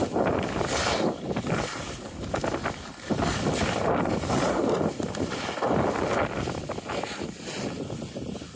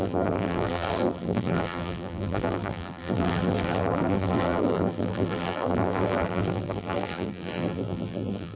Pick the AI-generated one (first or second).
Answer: second